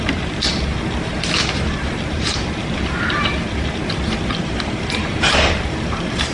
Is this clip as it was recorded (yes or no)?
no